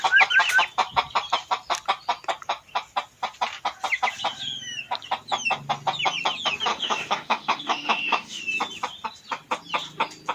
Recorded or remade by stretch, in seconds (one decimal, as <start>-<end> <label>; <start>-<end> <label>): 0.0-6.7 recorded; 6.7-8.4 remade; 8.4-10.3 recorded